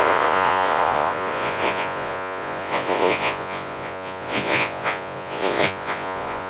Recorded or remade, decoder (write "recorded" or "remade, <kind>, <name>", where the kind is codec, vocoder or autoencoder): remade, vocoder, Vocos